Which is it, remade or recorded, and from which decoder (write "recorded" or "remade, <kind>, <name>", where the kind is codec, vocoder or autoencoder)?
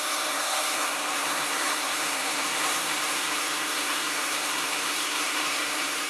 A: remade, codec, SNAC